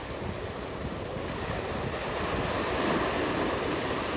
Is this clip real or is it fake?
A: fake